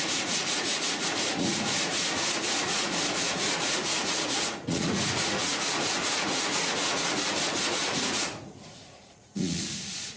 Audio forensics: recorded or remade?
remade